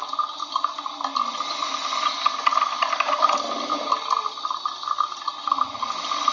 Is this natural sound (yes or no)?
yes